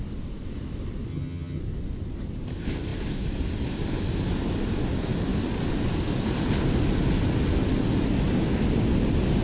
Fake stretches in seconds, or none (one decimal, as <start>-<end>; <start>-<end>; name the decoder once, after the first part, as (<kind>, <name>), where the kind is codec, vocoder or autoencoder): 1.1-1.6 (vocoder, HiFi-GAN)